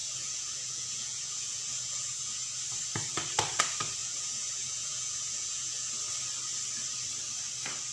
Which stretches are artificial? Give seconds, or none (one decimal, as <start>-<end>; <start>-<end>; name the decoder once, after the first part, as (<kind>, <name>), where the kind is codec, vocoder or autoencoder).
0.0-2.6 (vocoder, Vocos); 4.0-5.9